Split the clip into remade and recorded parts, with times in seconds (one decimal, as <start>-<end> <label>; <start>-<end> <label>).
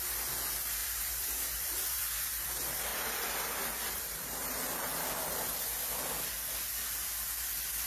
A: 0.0-0.8 recorded; 0.8-2.5 remade; 2.5-7.9 recorded